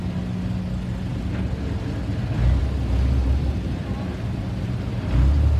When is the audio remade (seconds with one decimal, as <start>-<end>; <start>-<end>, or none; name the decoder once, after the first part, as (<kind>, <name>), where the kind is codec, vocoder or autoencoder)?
3.2-5.6 (vocoder, BigVGAN v2)